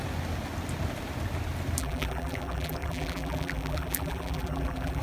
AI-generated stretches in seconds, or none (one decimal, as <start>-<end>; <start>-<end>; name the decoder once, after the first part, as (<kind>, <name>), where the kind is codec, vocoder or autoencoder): 1.8-5.0 (vocoder, BigVGAN v2)